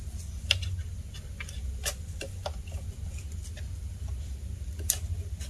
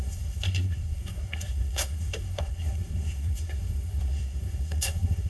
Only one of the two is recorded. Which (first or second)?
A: first